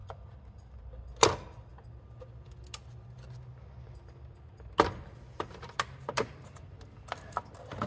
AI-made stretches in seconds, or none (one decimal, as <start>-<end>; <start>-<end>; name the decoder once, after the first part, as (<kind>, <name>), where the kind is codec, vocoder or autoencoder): none